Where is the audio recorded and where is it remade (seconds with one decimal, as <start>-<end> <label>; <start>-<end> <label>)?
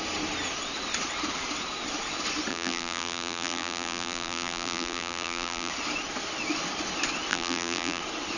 0.0-2.5 recorded; 2.5-5.7 remade; 5.7-7.3 recorded; 7.3-8.0 remade; 8.0-8.4 recorded